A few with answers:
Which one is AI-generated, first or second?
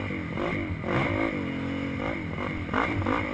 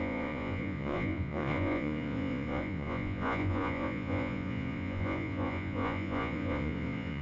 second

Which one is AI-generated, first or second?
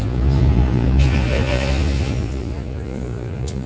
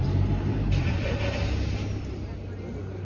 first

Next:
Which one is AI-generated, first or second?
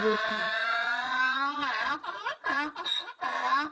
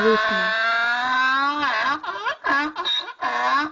first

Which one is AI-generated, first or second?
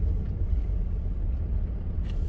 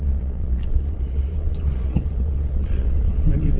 second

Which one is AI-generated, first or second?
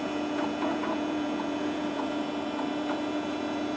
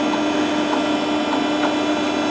first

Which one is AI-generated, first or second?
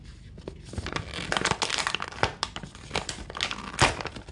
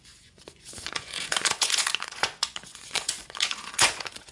second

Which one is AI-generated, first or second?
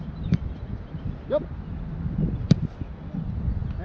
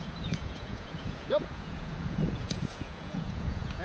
second